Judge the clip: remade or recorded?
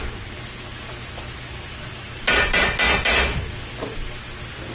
recorded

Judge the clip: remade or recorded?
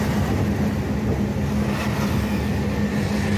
recorded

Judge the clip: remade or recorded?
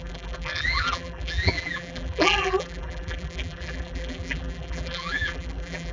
remade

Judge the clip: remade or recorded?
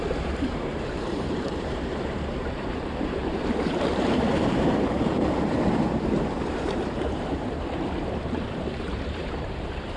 remade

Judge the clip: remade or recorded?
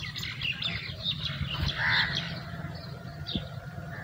recorded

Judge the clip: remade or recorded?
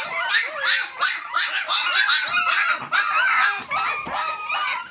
recorded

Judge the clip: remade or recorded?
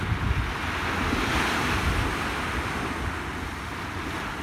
recorded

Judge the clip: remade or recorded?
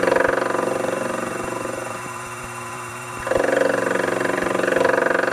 remade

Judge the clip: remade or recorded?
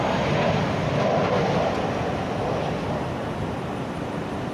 recorded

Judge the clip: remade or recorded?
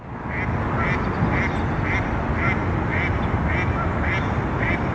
recorded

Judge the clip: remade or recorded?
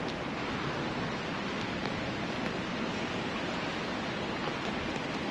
recorded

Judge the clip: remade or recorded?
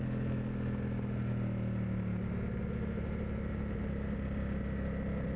recorded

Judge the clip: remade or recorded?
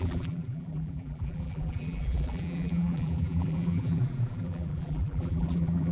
remade